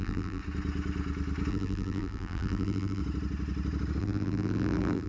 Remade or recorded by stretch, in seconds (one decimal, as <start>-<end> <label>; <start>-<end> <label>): 0.0-0.4 remade; 0.4-1.5 recorded; 1.5-3.0 remade; 3.0-4.0 recorded; 4.0-5.1 remade